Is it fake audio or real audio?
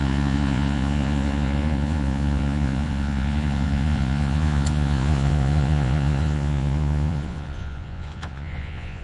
fake